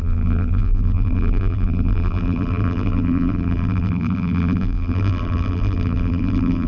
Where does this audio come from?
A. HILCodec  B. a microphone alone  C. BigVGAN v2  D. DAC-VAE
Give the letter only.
C